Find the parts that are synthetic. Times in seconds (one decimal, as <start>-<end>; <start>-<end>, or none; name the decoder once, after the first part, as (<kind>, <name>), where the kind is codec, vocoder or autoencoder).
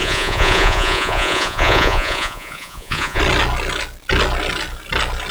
0.0-3.2 (vocoder, Vocos)